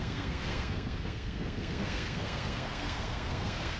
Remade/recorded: remade